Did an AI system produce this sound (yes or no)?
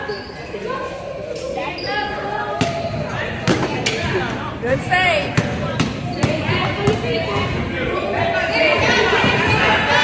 no